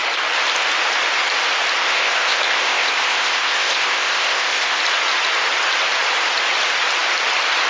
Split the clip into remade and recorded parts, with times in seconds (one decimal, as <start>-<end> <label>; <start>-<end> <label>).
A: 0.0-1.8 recorded; 1.8-4.8 remade; 4.8-7.7 recorded